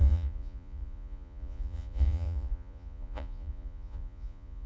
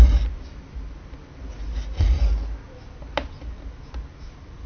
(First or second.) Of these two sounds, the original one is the second